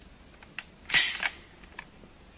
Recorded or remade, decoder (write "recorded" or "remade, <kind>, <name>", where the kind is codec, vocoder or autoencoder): recorded